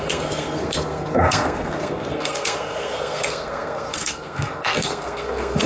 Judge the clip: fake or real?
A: fake